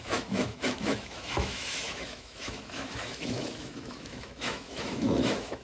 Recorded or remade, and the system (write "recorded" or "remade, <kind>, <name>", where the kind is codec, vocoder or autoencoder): remade, autoencoder, DAC-VAE